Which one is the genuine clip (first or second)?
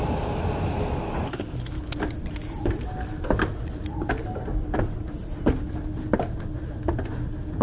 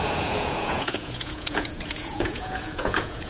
first